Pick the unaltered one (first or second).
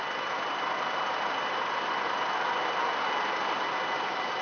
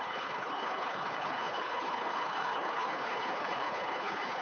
first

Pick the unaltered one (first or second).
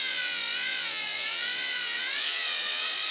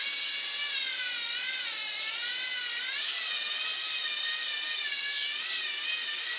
second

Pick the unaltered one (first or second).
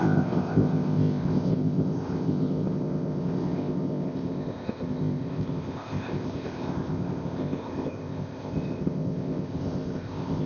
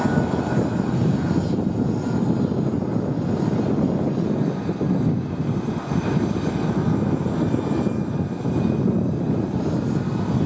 second